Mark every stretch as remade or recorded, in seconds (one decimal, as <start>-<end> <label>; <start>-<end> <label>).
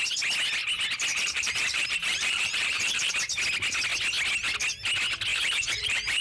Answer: 0.0-1.1 recorded; 1.1-3.1 remade; 3.1-5.3 recorded; 5.3-6.2 remade